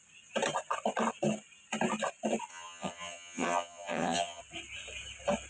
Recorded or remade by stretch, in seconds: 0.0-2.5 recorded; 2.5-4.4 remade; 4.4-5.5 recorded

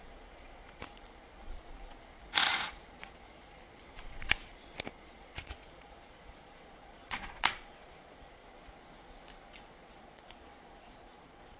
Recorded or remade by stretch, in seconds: 0.0-8.4 remade; 8.4-9.5 recorded; 9.5-11.6 remade

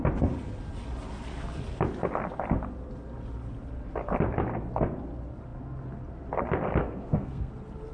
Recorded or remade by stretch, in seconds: 0.0-6.8 recorded; 6.8-7.5 remade; 7.5-7.9 recorded